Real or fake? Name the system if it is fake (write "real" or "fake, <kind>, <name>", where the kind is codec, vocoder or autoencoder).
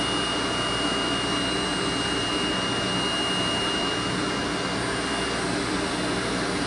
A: real